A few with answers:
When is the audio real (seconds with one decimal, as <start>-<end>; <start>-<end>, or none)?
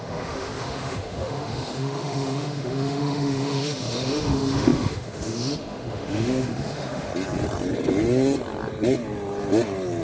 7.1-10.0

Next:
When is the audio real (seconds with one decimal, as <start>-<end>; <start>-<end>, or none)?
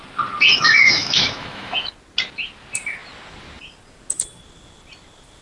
0.0-0.5; 1.9-5.4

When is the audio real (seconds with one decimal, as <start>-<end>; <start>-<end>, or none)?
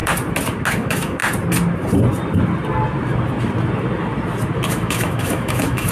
0.0-0.7; 1.2-4.7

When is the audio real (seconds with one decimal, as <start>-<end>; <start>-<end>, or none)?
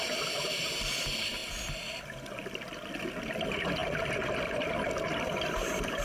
0.0-6.0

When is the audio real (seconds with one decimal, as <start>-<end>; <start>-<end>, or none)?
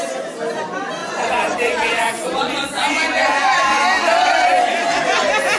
0.0-1.0; 3.8-5.6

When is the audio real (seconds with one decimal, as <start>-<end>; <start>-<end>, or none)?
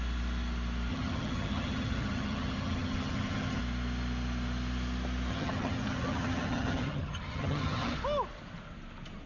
0.0-0.9; 3.6-5.3; 7.9-9.3